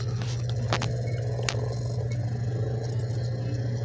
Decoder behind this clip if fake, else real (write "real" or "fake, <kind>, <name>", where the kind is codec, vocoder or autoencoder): real